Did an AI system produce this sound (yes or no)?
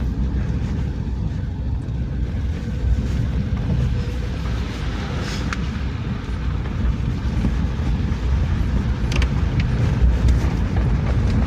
no